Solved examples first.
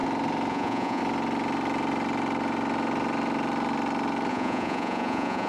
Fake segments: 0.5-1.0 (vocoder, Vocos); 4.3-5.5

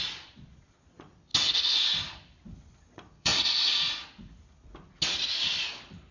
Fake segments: 0.0-1.3 (vocoder, Vocos); 2.9-3.3